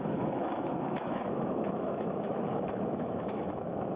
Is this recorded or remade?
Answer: remade